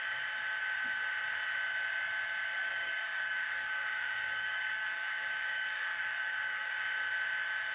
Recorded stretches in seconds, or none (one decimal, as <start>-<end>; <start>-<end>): 0.0-2.6; 6.9-7.7

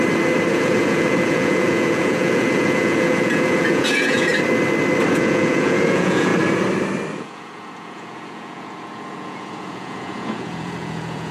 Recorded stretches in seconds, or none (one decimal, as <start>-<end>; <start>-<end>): 0.0-0.5; 4.3-5.1; 6.3-7.1

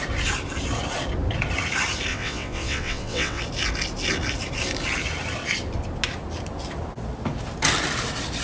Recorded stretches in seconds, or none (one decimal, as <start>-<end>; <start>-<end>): 0.0-2.1; 3.4-8.4

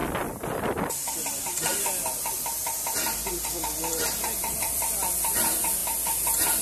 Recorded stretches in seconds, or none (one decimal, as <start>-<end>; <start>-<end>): 0.0-0.6; 2.6-3.3; 5.8-6.6

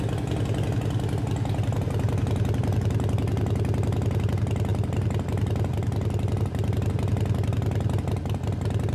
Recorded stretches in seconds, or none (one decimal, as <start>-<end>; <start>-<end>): 0.0-8.9

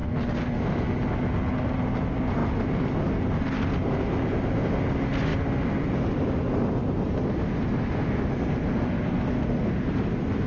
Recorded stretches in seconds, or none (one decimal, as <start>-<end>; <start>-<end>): 0.0-10.5